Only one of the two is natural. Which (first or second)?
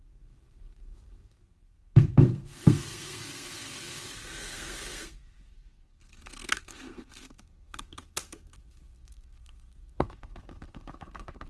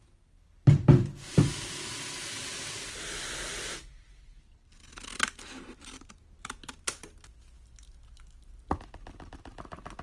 second